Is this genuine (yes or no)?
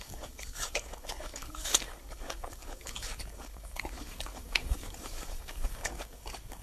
no